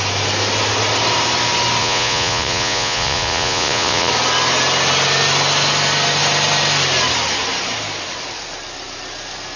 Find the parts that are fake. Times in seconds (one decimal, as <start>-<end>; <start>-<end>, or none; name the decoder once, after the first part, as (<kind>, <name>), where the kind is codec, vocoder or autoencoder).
1.8-4.1 (vocoder, Vocos)